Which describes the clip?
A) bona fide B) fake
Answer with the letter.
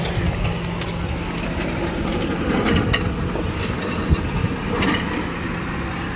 A